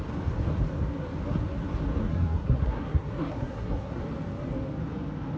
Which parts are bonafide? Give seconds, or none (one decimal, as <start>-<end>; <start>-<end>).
0.0-2.0; 4.0-5.4